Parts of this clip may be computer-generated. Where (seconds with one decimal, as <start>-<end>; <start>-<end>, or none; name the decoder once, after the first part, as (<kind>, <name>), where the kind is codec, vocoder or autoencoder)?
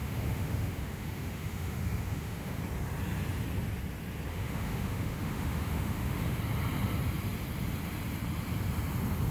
0.0-2.6 (autoencoder, DAC-VAE); 4.3-6.4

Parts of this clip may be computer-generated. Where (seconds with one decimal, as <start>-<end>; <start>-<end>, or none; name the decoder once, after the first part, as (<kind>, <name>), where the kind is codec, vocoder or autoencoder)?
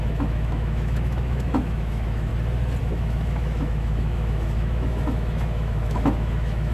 0.0-2.3 (autoencoder, DAC-VAE); 2.8-6.7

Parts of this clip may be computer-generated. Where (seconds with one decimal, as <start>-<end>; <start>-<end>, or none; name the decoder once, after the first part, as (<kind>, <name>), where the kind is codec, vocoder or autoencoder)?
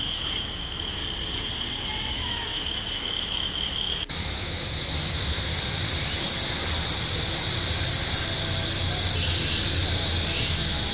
0.0-1.0 (autoencoder, DAC-VAE); 2.1-5.5; 10.4-10.9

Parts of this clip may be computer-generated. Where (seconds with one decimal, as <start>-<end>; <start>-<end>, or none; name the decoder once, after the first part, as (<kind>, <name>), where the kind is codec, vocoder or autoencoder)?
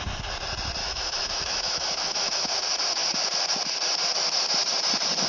0.8-2.6 (autoencoder, DAC-VAE)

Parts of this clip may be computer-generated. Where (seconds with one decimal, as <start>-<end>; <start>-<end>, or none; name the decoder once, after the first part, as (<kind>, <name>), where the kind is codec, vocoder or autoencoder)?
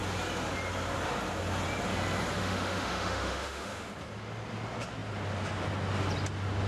2.4-3.9 (autoencoder, DAC-VAE)